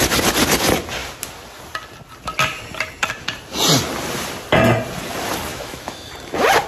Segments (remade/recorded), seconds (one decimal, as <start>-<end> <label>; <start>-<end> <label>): 0.0-5.5 recorded; 5.5-6.1 remade; 6.1-6.7 recorded